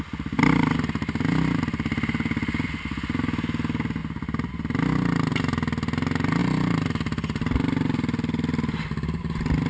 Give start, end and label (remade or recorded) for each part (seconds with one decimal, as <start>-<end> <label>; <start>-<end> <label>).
0.0-9.7 recorded